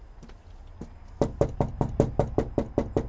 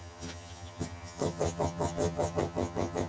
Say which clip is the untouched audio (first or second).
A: first